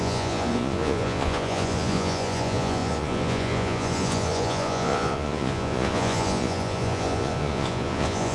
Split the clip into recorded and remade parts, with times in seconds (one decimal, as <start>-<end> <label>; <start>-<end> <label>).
0.0-8.3 remade